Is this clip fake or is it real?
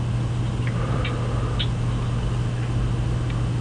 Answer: fake